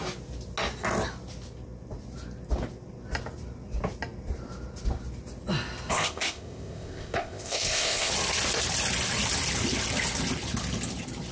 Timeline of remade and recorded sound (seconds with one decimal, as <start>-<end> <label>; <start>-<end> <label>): 0.0-5.9 recorded; 5.9-8.1 remade; 8.1-11.3 recorded